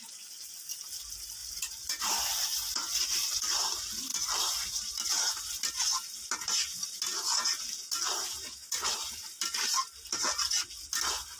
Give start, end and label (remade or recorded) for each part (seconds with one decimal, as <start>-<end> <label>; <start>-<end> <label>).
0.0-1.4 recorded; 1.4-2.0 remade; 2.0-11.4 recorded